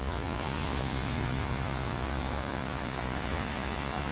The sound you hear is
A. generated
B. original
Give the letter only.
A